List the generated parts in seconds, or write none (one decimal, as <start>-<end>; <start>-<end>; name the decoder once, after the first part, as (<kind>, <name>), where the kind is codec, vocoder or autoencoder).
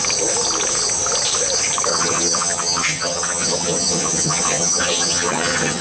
1.9-5.8 (vocoder, HiFi-GAN)